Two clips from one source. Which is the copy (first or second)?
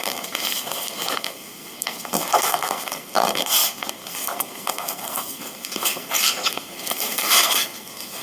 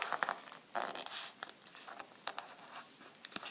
first